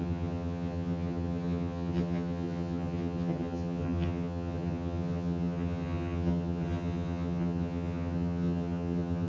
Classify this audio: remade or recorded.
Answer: remade